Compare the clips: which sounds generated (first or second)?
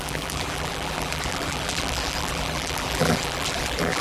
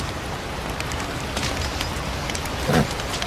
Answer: first